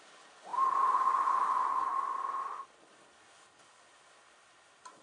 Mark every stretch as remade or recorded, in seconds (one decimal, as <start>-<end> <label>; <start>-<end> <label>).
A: 0.0-5.0 remade